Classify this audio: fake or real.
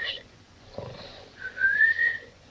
fake